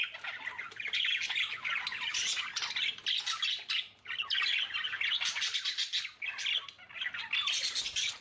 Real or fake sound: real